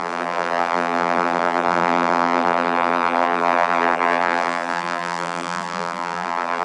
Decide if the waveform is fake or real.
fake